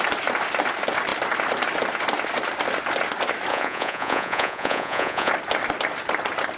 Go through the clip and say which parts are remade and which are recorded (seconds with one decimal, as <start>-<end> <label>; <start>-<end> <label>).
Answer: 0.0-3.5 recorded; 3.5-5.3 remade; 5.3-6.6 recorded